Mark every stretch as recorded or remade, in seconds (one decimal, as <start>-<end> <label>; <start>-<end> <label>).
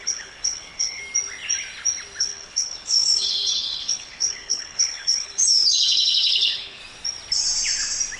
0.0-1.0 remade; 1.0-2.2 recorded; 2.2-6.8 remade; 6.8-8.2 recorded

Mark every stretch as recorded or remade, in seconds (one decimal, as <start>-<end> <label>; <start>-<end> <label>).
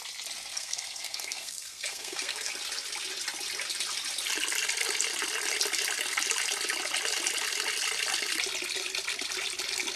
0.0-0.5 recorded; 0.5-2.5 remade; 2.5-10.0 recorded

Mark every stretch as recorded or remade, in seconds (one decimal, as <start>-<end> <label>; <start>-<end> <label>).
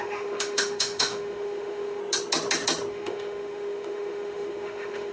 0.0-2.0 remade; 2.0-2.9 recorded; 2.9-5.1 remade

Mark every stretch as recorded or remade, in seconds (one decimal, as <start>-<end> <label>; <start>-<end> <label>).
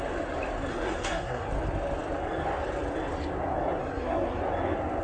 0.0-0.7 recorded; 0.7-1.5 remade; 1.5-3.8 recorded; 3.8-4.4 remade; 4.4-5.0 recorded